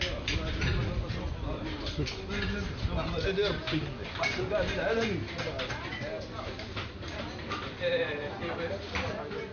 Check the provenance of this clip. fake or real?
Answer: real